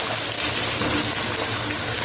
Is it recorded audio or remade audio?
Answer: recorded